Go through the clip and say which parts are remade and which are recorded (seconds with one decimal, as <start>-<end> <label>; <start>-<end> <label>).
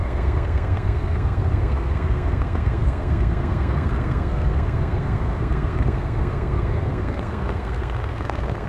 0.0-8.7 remade